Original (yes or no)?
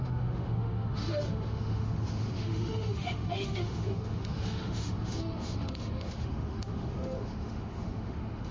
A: no